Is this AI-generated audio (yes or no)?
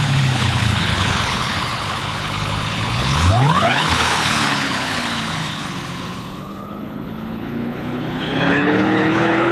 yes